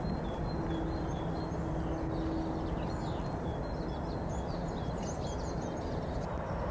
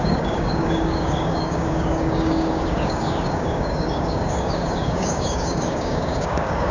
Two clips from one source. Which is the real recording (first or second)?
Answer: first